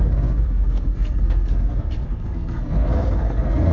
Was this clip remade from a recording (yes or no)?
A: yes